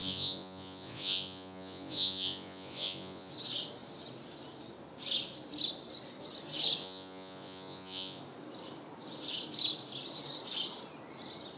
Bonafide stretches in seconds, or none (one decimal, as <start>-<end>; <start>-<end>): 3.3-6.8; 8.2-11.6